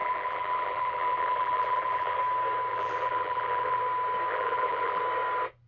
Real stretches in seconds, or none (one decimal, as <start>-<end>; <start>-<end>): 2.2-2.7; 3.8-4.3; 5.0-5.7